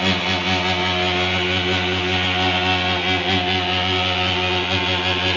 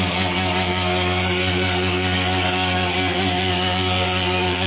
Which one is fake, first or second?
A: second